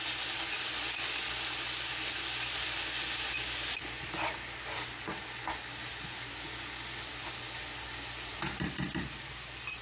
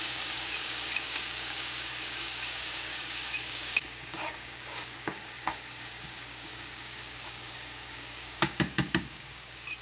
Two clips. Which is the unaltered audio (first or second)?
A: first